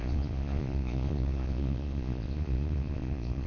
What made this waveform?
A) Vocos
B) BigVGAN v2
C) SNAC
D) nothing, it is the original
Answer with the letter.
A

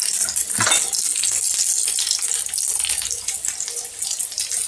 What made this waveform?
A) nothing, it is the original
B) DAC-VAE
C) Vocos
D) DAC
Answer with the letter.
A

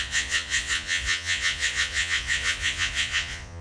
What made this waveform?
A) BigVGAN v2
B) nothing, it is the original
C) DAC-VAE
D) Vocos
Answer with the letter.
D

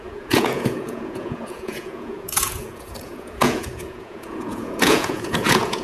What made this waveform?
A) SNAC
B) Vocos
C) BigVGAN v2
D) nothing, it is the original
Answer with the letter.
B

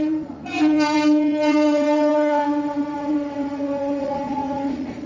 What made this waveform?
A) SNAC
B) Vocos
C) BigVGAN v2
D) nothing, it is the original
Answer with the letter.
B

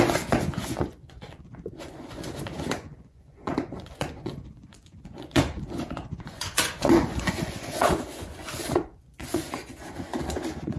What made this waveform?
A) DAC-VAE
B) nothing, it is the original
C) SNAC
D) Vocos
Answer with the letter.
D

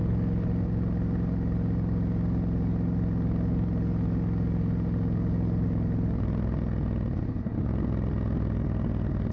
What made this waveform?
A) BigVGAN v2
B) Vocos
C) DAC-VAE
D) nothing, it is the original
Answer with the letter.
D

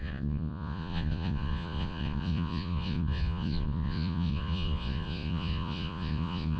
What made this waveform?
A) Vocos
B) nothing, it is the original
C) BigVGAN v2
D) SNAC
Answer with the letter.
A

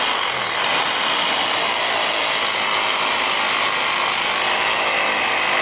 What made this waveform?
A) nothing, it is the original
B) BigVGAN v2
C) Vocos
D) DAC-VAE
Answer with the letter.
A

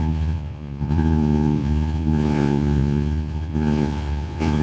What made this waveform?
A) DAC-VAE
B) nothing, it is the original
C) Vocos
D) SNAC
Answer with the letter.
C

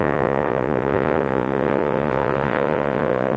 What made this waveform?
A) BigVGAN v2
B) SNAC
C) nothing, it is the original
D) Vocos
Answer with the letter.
D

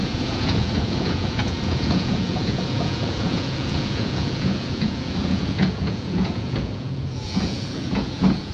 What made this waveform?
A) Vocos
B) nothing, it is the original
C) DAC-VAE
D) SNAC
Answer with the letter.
A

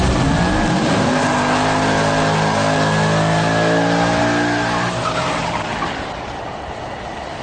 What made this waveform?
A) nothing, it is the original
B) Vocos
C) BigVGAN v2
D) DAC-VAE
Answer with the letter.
A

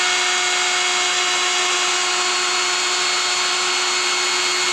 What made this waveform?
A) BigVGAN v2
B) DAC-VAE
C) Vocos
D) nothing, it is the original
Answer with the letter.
D